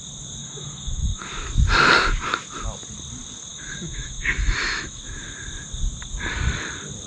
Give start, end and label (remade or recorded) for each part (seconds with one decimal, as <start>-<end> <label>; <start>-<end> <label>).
0.0-0.4 recorded; 0.4-1.2 remade; 1.2-3.5 recorded; 3.5-5.0 remade; 5.0-7.1 recorded